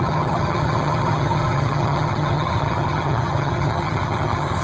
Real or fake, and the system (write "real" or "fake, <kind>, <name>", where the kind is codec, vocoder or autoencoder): fake, vocoder, HiFi-GAN